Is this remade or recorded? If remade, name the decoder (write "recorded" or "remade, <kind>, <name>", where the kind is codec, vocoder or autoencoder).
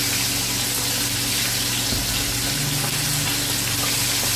recorded